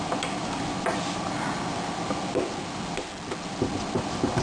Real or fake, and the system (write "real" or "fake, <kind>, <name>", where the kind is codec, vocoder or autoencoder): real